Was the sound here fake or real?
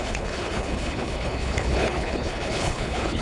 fake